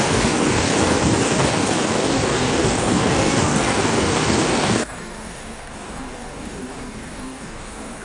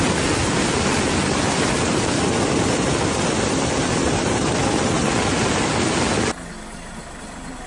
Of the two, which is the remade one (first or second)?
first